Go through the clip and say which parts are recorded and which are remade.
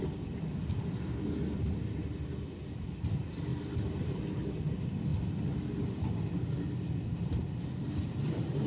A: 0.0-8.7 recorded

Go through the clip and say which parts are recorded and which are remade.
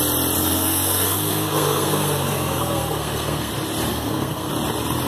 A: 0.0-0.4 recorded; 0.4-3.5 remade; 3.5-3.9 recorded; 3.9-4.5 remade; 4.5-5.1 recorded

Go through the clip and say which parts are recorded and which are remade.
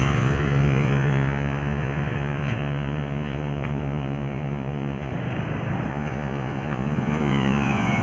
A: 0.0-5.1 remade; 5.1-5.9 recorded; 5.9-8.0 remade